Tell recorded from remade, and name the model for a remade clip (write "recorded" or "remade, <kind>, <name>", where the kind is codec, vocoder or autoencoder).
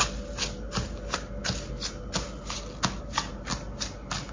recorded